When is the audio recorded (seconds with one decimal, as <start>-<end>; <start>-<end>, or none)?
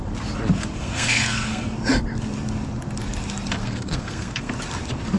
0.0-0.8; 1.6-3.6; 4.5-5.2